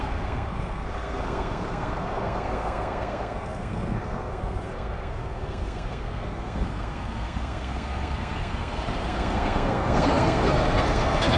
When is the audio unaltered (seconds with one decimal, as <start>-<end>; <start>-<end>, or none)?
none